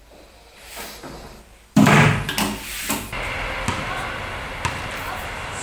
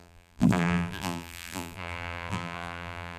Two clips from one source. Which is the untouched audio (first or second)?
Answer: first